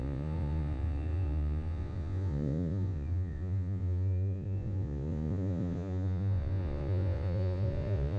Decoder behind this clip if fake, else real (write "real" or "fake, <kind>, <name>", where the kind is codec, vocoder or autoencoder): fake, vocoder, Vocos